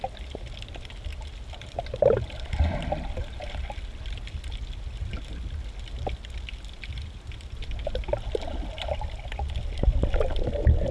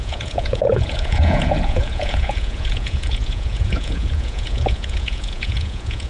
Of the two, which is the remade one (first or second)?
second